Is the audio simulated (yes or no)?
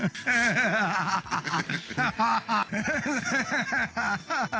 no